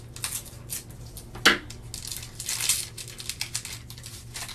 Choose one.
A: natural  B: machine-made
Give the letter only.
A